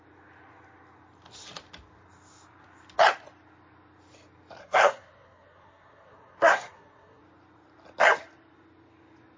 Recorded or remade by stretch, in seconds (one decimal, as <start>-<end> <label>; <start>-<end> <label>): 0.0-4.6 recorded; 4.6-7.2 remade; 7.2-9.4 recorded